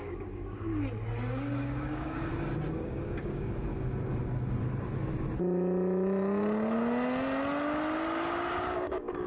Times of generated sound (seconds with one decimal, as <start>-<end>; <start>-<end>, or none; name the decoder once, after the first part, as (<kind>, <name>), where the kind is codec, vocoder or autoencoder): 0.0-0.7 (codec, DAC); 1.3-2.3; 2.8-3.7; 8.5-9.3